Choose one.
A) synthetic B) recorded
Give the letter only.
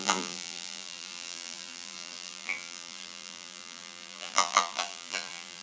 A